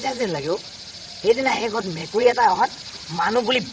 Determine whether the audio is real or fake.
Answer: fake